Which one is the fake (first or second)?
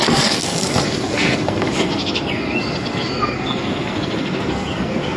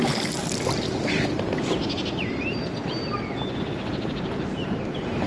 first